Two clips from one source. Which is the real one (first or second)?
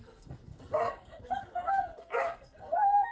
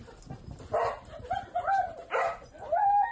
second